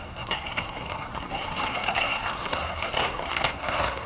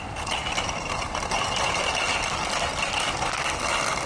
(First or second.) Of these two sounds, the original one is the second